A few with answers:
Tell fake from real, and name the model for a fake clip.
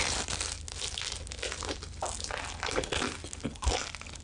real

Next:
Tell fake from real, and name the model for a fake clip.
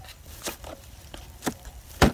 fake, vocoder, BigVGAN v2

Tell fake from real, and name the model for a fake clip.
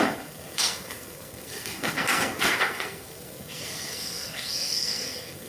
fake, codec, SNAC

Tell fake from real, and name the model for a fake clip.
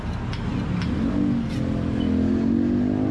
real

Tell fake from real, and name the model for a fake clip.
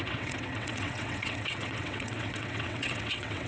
fake, vocoder, WaveNeXt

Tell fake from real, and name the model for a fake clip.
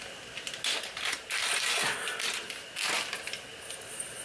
real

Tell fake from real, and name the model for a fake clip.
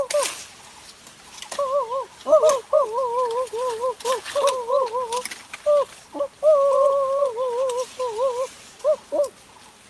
real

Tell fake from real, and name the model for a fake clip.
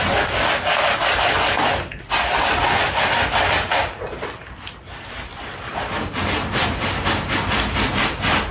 real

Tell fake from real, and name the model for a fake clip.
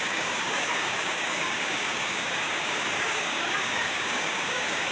fake, codec, DAC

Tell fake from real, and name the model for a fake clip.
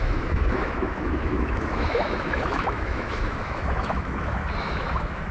fake, autoencoder, DAC-VAE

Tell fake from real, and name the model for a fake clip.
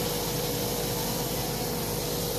real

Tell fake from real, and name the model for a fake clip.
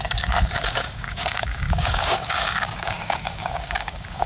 fake, codec, DAC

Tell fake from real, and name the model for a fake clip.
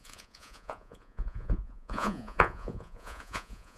fake, vocoder, Vocos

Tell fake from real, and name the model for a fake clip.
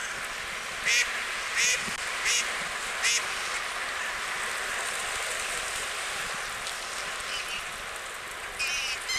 real